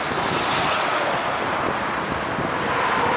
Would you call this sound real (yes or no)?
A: yes